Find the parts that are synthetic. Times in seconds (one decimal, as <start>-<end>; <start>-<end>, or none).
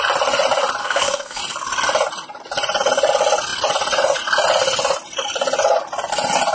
0.8-1.4